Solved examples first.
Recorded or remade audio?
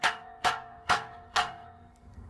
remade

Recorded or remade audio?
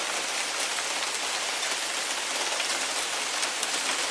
recorded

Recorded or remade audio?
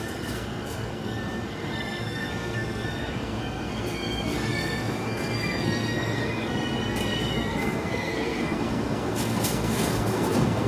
remade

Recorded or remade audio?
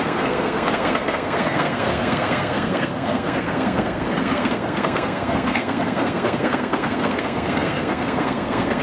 remade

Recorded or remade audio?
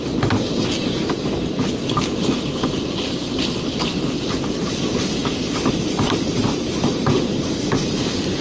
recorded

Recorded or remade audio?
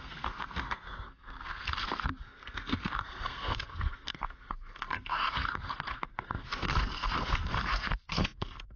remade